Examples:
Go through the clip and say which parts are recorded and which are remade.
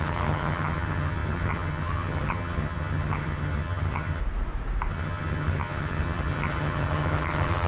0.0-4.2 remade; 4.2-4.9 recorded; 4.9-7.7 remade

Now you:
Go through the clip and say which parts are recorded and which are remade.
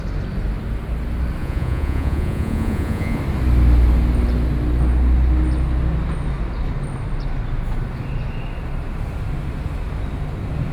0.0-1.4 recorded; 1.4-3.2 remade; 3.2-10.7 recorded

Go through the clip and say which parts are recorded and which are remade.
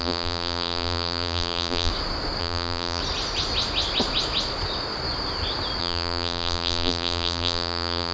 0.0-1.9 remade; 1.9-2.4 recorded; 2.4-3.0 remade; 3.0-5.8 recorded; 5.8-8.1 remade